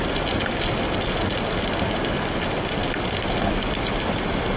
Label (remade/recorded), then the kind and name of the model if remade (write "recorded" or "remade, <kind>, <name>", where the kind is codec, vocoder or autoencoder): recorded